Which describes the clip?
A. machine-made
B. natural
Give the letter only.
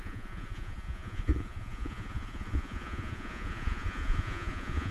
A